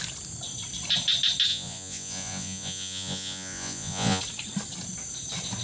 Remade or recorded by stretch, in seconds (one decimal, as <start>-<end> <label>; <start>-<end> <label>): 0.0-1.5 recorded; 1.5-4.2 remade; 4.2-5.6 recorded

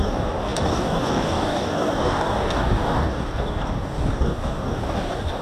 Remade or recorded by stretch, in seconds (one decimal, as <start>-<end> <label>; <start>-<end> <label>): 0.0-5.4 remade